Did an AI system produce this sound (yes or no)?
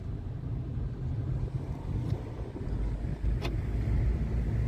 no